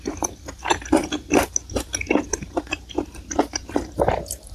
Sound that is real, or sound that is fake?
real